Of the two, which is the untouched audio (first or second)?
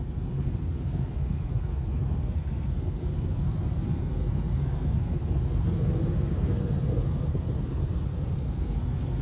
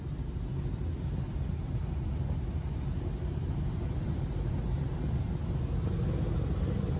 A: second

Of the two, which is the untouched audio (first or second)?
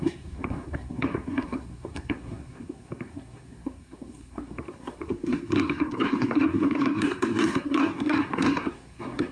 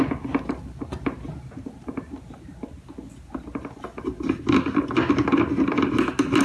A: second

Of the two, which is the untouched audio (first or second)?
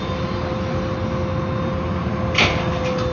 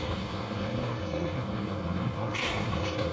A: first